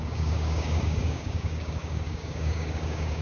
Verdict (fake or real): fake